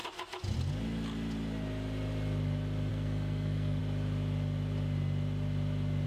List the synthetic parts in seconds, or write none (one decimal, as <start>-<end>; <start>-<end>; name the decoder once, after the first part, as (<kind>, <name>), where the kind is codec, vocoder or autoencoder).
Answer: 2.9-3.8 (codec, SNAC)

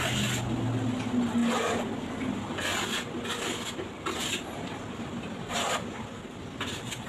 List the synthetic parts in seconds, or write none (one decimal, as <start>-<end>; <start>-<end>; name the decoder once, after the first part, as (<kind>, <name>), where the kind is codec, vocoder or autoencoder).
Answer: none

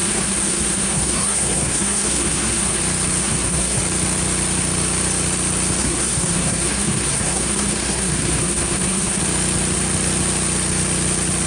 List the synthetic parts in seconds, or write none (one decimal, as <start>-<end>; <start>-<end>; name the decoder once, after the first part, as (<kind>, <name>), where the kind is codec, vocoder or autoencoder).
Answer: 0.0-2.8 (codec, SNAC); 3.2-3.8; 5.8-9.2